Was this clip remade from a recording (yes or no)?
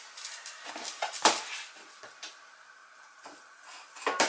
no